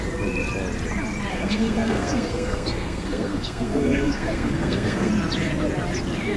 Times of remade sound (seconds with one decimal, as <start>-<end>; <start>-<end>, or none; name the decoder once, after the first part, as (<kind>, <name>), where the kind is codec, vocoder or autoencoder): 1.3-5.1 (codec, SNAC)